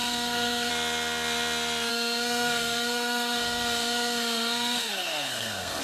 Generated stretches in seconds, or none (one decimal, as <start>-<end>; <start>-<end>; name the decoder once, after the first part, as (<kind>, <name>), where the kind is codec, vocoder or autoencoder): 0.0-0.7 (codec, SNAC); 1.9-5.8